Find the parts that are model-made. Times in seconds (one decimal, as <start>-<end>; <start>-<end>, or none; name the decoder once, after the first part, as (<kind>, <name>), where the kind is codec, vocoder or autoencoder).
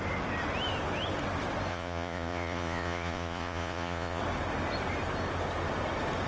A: 1.7-4.2 (vocoder, Vocos)